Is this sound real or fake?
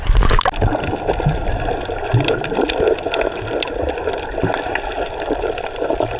real